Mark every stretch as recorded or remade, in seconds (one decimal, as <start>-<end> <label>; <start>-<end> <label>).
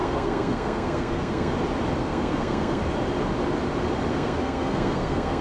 0.0-1.5 remade; 1.5-2.0 recorded; 2.0-2.8 remade; 2.8-4.1 recorded; 4.1-5.4 remade